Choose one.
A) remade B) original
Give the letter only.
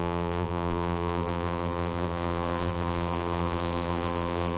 A